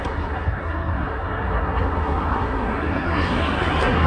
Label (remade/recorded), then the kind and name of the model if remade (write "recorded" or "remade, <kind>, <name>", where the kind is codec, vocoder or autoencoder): remade, codec, SNAC